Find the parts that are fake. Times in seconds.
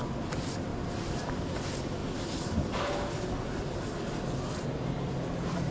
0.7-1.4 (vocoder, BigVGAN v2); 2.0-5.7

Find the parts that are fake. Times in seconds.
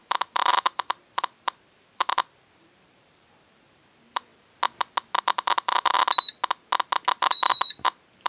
0.0-4.3 (vocoder, BigVGAN v2); 5.2-6.0; 7.2-8.3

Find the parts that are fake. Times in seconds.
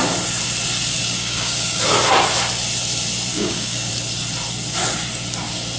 1.0-1.8 (codec, DAC); 3.3-3.9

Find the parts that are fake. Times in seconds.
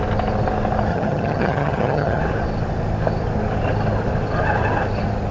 0.9-2.2 (vocoder, HiFi-GAN)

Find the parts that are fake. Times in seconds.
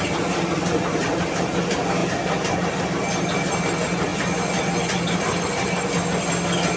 none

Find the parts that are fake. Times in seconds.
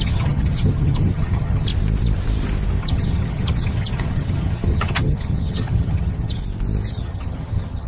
0.0-1.7 (vocoder, HiFi-GAN); 2.8-6.4; 6.9-7.9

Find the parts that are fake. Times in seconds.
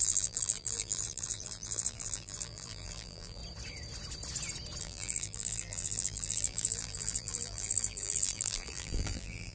0.0-3.4 (vocoder, BigVGAN v2); 4.8-9.5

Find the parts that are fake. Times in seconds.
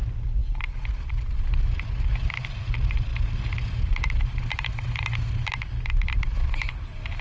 none